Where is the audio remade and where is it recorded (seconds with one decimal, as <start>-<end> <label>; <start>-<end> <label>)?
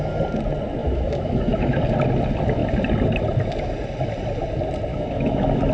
0.0-0.8 recorded; 0.8-1.8 remade; 1.8-4.9 recorded; 4.9-5.7 remade